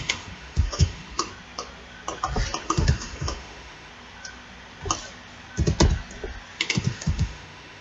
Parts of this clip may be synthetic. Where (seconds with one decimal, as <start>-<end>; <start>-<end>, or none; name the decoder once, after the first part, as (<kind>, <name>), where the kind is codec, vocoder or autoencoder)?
0.0-1.3 (autoencoder, DAC-VAE); 2.6-3.9; 6.7-7.8